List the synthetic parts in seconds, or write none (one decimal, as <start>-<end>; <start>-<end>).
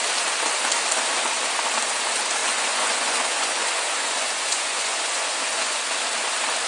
2.4-5.8